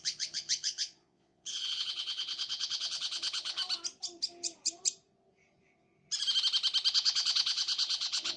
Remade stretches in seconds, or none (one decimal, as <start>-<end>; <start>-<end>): 0.0-3.6; 6.9-8.4